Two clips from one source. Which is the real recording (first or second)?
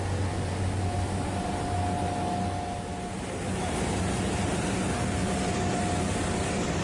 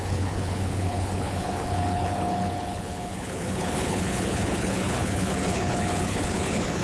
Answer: first